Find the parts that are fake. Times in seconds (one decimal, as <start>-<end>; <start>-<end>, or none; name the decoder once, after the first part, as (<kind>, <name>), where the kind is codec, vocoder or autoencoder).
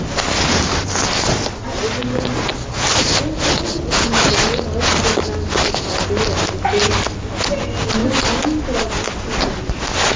none